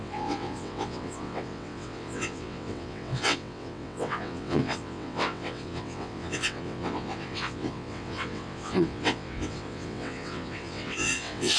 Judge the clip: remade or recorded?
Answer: remade